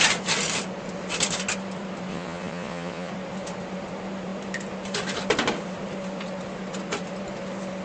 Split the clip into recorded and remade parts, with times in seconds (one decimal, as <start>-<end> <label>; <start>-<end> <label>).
0.0-2.1 recorded; 2.1-3.1 remade; 3.1-7.8 recorded